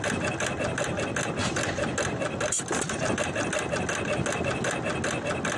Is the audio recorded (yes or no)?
yes